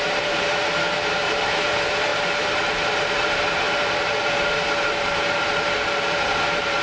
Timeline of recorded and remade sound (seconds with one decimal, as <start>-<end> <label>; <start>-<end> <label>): 0.0-6.8 remade